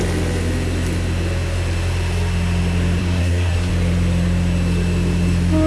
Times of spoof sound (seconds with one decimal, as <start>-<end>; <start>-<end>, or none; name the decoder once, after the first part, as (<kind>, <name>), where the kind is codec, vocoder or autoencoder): 3.0-3.7 (codec, SNAC)